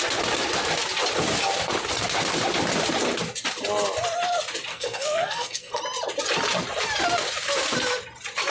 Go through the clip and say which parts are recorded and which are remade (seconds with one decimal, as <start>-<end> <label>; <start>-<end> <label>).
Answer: 0.0-4.7 recorded; 4.7-5.8 remade; 5.8-8.5 recorded